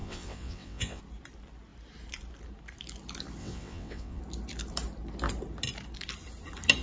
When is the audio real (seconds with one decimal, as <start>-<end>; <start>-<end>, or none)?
1.0-3.4; 4.2-6.8